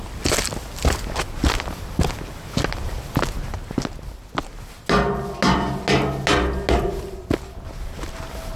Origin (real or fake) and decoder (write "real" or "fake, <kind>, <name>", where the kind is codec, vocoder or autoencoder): real